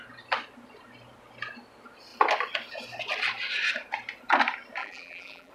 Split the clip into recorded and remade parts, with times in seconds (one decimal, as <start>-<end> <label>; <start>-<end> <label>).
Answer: 0.0-4.8 recorded; 4.8-5.5 remade